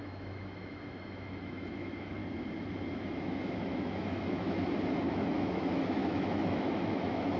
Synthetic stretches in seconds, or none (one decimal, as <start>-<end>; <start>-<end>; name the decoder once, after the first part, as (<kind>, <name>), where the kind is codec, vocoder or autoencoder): 0.0-2.2 (autoencoder, DAC-VAE); 2.9-7.4

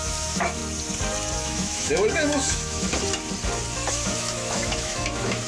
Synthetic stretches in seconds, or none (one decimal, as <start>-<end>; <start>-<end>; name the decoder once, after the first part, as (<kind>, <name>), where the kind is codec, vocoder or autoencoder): 0.0-0.6 (autoencoder, DAC-VAE); 1.4-2.9; 3.9-5.5

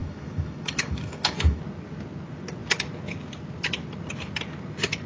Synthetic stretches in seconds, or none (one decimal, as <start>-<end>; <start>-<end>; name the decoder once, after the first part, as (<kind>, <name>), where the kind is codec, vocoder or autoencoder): 0.0-1.6 (autoencoder, DAC-VAE)

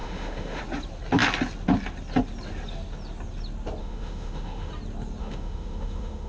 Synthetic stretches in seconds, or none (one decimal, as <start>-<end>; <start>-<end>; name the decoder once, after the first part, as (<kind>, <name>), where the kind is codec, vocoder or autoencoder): 0.0-0.6 (autoencoder, DAC-VAE); 3.8-4.7; 5.2-6.3

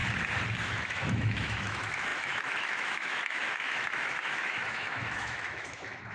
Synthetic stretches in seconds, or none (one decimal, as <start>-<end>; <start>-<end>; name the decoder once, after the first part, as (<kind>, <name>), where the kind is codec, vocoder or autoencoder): 0.6-6.1 (autoencoder, DAC-VAE)